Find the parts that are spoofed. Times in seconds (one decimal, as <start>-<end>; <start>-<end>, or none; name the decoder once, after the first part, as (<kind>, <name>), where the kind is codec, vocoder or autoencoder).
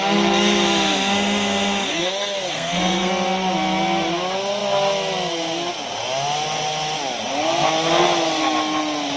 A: 1.9-3.1 (codec, SNAC)